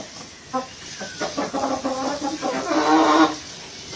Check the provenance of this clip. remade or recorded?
recorded